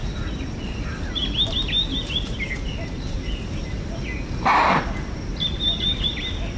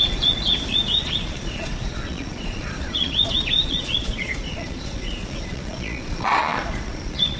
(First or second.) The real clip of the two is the first